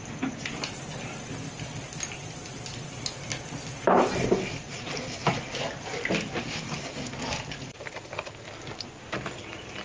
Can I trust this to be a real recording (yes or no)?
yes